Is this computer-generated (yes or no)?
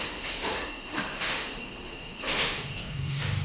yes